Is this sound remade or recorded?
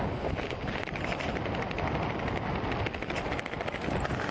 recorded